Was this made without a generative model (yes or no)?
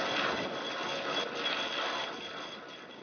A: no